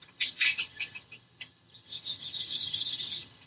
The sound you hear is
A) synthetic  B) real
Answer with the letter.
A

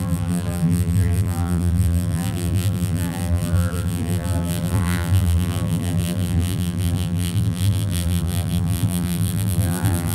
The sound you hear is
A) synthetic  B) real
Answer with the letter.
A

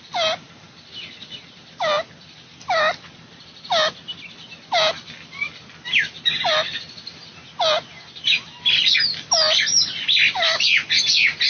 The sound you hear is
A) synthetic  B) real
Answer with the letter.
B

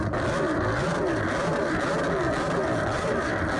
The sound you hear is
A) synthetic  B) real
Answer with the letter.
B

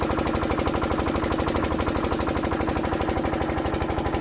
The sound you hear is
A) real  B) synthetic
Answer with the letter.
A